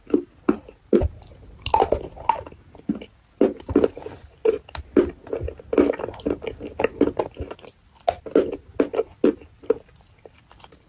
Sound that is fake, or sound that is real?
real